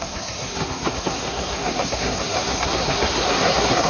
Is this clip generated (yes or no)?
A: yes